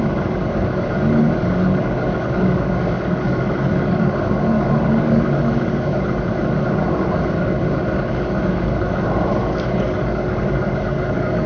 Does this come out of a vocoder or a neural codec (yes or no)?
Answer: yes